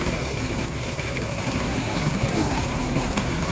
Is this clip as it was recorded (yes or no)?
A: no